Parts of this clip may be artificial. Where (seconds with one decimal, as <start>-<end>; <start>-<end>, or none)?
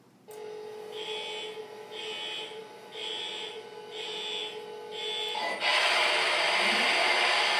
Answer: none